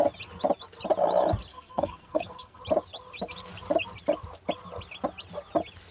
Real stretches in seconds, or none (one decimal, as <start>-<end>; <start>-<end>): 0.0-1.5; 2.6-5.9